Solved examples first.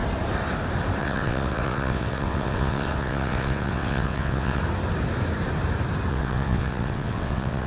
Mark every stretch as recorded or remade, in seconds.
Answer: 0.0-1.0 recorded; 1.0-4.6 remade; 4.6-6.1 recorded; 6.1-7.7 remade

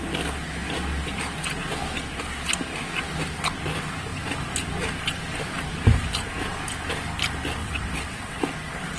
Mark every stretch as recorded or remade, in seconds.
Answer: 0.0-7.6 recorded; 7.6-8.4 remade; 8.4-9.0 recorded

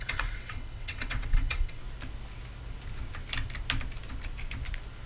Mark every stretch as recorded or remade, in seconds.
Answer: 0.0-1.8 remade; 1.8-5.1 recorded